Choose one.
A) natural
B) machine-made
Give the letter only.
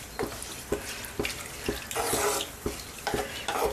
A